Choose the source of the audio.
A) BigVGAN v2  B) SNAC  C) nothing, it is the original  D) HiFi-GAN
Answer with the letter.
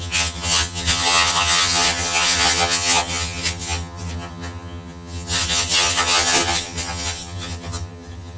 D